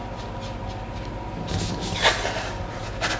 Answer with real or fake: real